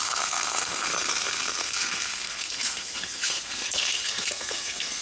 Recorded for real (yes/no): no